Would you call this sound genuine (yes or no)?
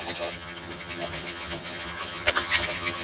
no